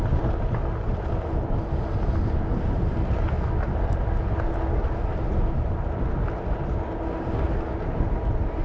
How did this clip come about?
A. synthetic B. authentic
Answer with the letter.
B